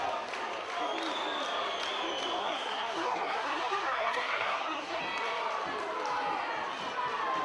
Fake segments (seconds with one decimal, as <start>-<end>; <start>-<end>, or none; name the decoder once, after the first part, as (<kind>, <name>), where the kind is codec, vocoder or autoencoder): 2.4-5.0 (codec, SNAC)